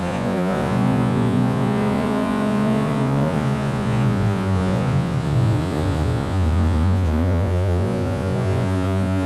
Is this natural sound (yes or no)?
no